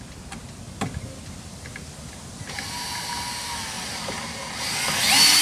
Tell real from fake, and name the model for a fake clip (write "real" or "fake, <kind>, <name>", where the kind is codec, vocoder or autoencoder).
real